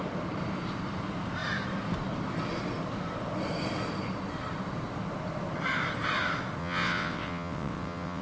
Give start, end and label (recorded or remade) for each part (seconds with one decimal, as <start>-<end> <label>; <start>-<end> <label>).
0.0-6.6 recorded; 6.6-8.2 remade